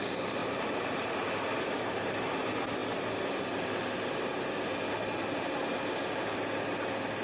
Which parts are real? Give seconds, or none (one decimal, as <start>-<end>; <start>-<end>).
0.0-7.2